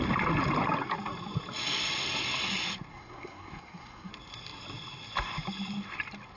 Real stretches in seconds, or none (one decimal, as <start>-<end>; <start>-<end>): 0.0-2.9; 4.1-6.4